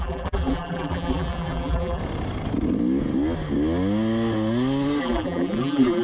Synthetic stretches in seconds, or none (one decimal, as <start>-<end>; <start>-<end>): 0.0-2.0; 5.0-6.0

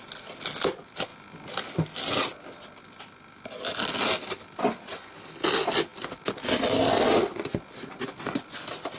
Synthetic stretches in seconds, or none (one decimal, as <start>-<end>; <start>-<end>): none

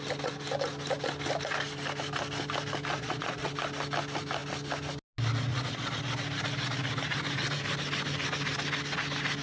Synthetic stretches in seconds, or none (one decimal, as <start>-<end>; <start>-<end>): 2.9-3.5; 5.5-6.0